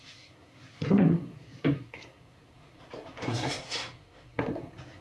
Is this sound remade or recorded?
remade